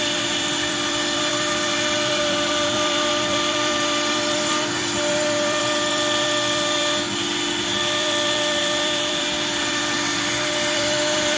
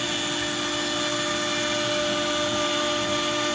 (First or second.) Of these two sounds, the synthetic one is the first